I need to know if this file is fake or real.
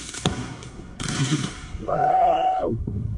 fake